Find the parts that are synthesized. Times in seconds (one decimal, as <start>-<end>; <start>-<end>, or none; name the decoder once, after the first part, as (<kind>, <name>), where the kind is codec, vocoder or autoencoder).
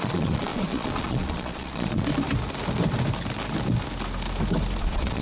0.0-2.1 (vocoder, Vocos); 4.8-5.2